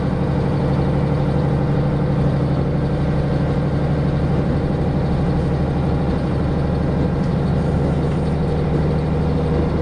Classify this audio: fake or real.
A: real